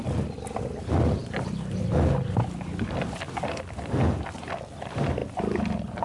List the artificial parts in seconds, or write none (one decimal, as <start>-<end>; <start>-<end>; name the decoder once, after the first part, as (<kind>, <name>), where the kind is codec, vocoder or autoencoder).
none

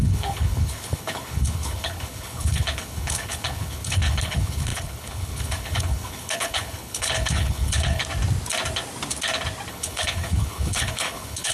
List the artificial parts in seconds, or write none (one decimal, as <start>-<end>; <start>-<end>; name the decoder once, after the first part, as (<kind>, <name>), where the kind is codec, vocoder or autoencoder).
0.0-8.0 (codec, HILCodec); 9.7-11.5

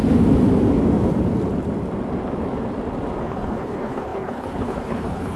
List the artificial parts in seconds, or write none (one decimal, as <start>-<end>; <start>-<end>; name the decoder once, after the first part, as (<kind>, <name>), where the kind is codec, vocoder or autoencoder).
3.2-5.4 (codec, HILCodec)

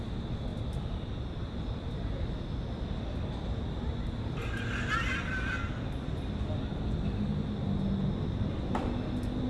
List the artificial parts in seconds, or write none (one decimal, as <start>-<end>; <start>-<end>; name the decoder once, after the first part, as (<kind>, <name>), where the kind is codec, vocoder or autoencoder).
none